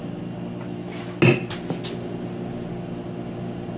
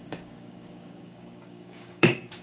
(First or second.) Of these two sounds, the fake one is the second